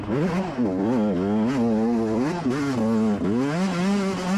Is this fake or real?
real